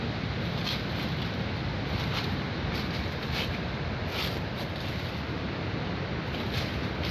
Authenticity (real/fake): real